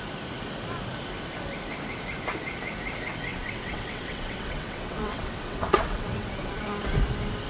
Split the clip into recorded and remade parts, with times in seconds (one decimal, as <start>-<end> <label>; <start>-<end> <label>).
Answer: 0.0-3.3 recorded; 3.3-6.3 remade; 6.3-7.5 recorded